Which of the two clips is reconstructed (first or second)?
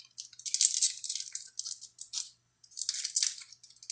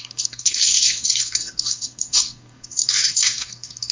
second